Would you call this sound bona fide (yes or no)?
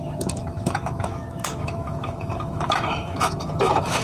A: no